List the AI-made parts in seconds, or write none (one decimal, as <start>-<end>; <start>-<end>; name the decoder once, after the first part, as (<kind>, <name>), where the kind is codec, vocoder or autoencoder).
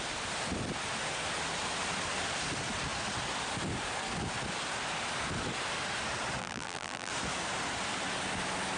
6.4-7.1 (vocoder, BigVGAN v2)